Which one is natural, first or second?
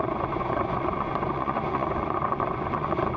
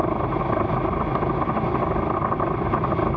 second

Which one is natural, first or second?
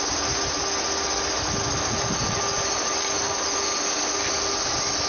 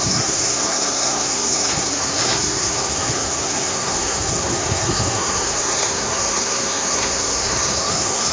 first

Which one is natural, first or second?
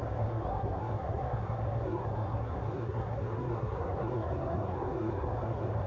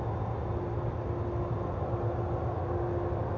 second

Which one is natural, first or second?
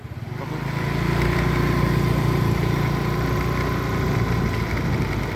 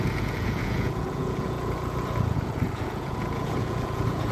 first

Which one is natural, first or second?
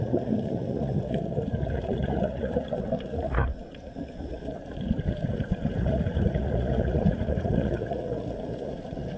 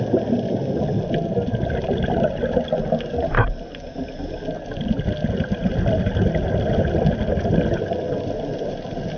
second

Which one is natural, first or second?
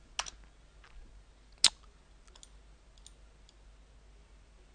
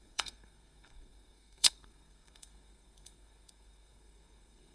first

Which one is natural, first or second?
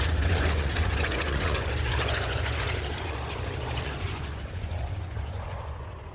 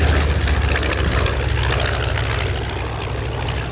second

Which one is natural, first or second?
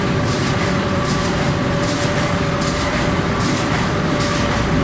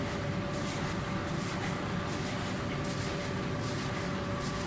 second